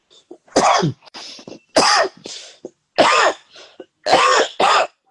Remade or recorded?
recorded